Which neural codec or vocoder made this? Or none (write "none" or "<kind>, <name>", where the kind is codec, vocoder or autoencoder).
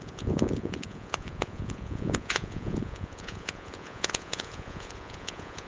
vocoder, Vocos